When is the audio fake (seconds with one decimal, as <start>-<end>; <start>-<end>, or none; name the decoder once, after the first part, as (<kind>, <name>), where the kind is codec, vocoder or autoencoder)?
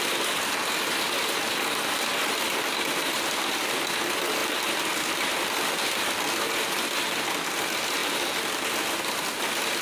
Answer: 8.0-8.9 (vocoder, BigVGAN v2)